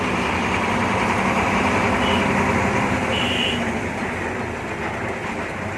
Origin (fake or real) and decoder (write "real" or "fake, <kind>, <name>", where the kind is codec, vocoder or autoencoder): real